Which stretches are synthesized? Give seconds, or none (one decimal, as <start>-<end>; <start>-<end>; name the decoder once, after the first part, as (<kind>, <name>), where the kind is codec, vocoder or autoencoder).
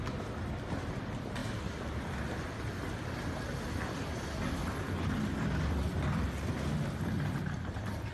none